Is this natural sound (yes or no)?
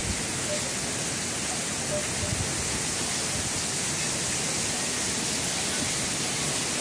yes